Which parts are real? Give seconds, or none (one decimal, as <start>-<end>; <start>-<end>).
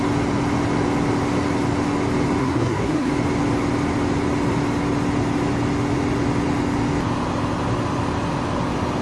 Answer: 0.0-2.4; 3.1-9.0